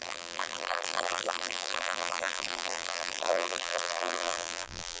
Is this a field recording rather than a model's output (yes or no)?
no